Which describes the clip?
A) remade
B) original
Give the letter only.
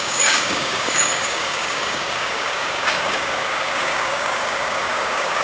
A